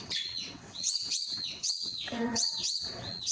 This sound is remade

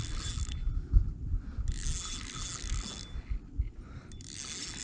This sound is recorded